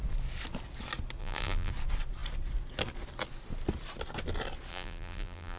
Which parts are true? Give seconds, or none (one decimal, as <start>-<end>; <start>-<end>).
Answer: 0.0-1.2; 1.7-4.7